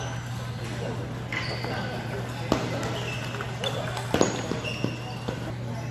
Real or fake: real